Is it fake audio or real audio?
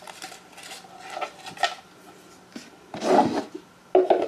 real